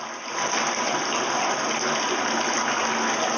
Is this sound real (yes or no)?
yes